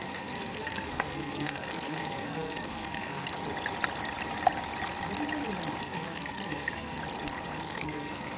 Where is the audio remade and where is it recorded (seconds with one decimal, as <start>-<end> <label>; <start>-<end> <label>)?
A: 0.0-3.4 remade; 3.4-5.8 recorded; 5.8-7.0 remade; 7.0-7.6 recorded; 7.6-8.4 remade

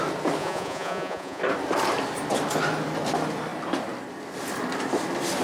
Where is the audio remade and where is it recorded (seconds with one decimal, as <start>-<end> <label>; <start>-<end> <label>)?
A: 0.0-0.4 recorded; 0.4-1.4 remade; 1.4-5.4 recorded

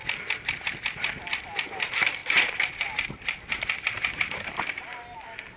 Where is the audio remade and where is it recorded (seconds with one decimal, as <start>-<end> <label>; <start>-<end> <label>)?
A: 0.0-5.6 recorded

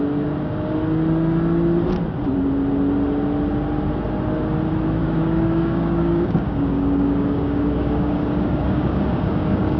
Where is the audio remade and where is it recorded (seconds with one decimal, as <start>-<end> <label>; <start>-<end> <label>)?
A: 0.0-5.0 recorded; 5.0-9.8 remade